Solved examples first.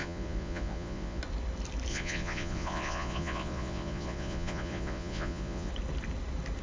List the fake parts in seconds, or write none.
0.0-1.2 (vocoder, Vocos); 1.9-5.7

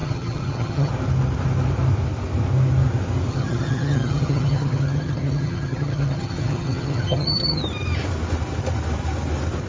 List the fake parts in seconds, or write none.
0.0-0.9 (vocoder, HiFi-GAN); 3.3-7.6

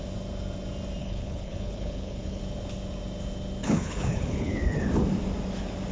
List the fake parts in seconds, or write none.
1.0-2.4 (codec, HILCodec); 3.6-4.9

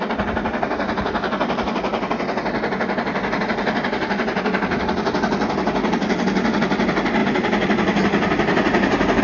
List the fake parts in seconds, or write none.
none

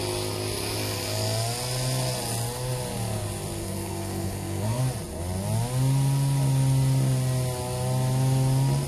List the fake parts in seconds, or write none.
3.6-4.8 (codec, SNAC)

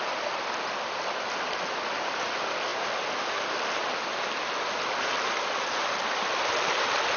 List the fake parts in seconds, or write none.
none